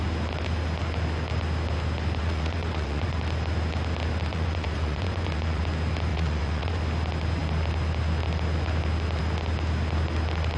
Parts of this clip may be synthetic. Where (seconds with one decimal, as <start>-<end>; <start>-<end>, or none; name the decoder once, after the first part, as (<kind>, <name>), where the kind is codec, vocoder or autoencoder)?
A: 2.2-3.2 (vocoder, Vocos); 4.3-5.6; 6.1-6.8